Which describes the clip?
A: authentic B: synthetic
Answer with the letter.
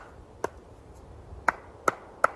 A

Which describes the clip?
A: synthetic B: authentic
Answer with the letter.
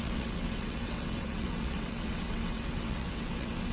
A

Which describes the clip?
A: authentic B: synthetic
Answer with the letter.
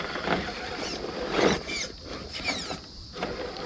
A